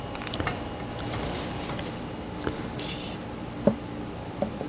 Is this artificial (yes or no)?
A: no